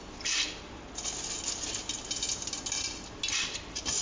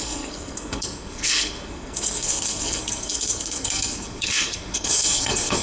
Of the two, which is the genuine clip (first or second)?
first